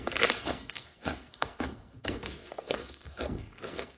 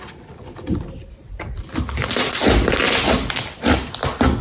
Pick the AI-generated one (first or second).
first